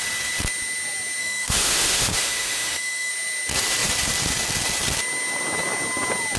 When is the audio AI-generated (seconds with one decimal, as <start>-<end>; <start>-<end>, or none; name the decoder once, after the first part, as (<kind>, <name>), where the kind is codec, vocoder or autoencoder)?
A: 1.2-3.1 (autoencoder, DAC-VAE)